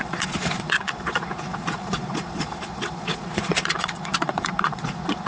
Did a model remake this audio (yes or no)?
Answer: yes